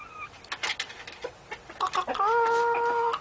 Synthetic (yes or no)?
no